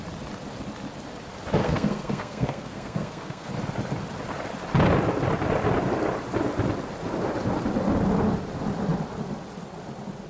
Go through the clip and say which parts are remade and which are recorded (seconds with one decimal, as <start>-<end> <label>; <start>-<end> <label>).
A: 0.0-1.6 recorded; 1.6-3.5 remade; 3.5-10.3 recorded